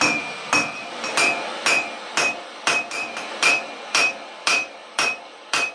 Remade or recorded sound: remade